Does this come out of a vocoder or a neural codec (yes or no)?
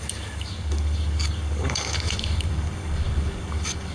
yes